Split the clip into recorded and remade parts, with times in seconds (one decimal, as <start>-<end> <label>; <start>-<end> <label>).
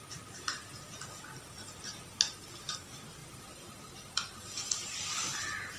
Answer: 0.0-3.2 recorded; 3.2-5.8 remade